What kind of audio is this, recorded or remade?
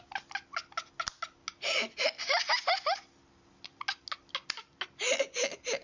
recorded